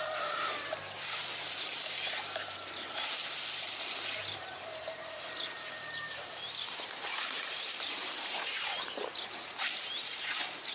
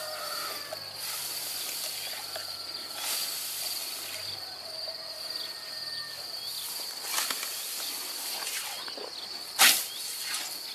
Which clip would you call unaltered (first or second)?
second